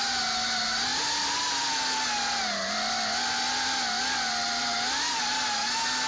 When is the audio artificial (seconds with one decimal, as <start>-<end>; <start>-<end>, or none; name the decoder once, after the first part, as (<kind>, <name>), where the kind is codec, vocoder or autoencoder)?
none